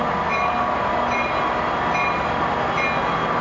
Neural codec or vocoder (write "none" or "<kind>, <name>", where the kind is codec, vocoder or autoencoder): none